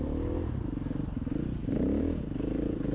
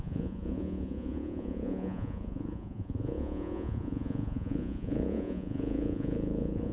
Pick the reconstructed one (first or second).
second